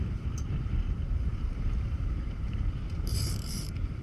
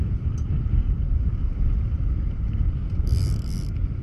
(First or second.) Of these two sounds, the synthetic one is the first